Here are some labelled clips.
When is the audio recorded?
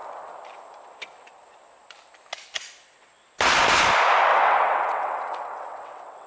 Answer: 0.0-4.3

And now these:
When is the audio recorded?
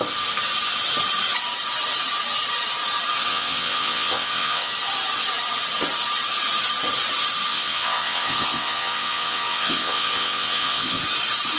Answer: 0.0-3.3; 4.7-7.5; 11.0-11.6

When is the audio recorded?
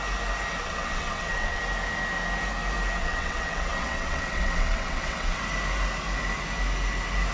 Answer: 0.0-0.6; 1.6-3.0; 5.4-7.3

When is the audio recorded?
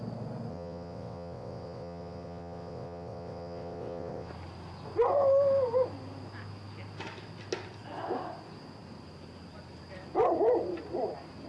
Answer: 0.0-0.5; 4.3-11.5